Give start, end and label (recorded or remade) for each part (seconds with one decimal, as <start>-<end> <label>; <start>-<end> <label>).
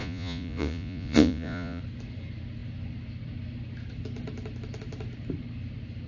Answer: 0.0-1.8 remade; 1.8-6.1 recorded